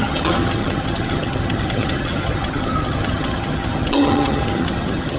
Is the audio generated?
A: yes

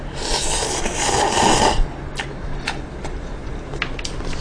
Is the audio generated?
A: no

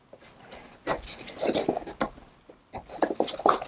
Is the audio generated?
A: no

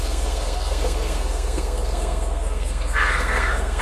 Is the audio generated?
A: yes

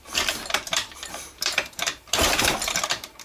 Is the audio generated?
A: yes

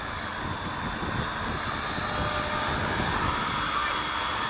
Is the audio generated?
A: no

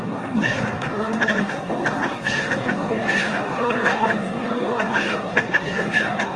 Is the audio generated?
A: yes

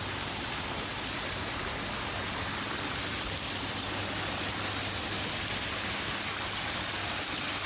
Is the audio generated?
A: no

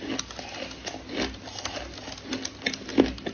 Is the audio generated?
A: no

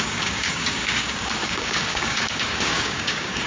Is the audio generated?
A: yes